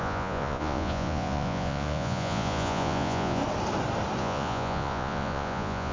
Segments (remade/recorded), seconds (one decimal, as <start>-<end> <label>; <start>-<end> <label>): 0.0-3.4 remade; 3.4-4.2 recorded; 4.2-5.9 remade